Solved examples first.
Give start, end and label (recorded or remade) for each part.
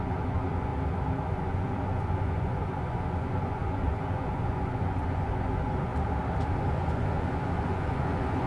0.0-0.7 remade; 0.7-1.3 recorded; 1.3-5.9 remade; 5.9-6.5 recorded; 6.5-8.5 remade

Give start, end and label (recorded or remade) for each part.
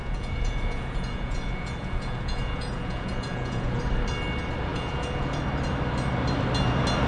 0.0-3.8 remade; 3.8-4.7 recorded; 4.7-5.4 remade; 5.4-7.1 recorded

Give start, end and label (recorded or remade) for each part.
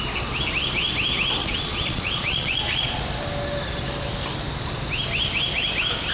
0.0-1.4 recorded; 1.4-3.0 remade; 3.0-6.1 recorded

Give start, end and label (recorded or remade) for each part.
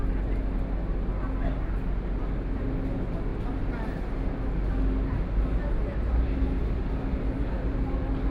0.0-8.3 recorded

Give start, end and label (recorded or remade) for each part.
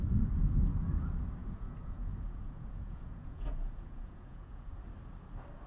0.0-1.4 recorded; 1.4-4.8 remade; 4.8-5.7 recorded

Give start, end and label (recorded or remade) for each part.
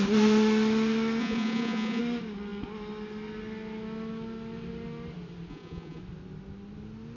0.0-1.2 recorded; 1.2-2.0 remade; 2.0-5.5 recorded; 5.5-6.0 remade; 6.0-7.2 recorded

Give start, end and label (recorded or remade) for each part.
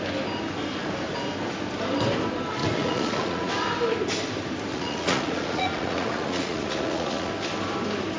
0.0-2.6 recorded; 2.6-3.5 remade; 3.5-4.7 recorded; 4.7-7.3 remade; 7.3-8.2 recorded